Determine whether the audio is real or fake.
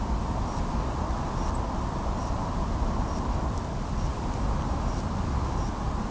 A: fake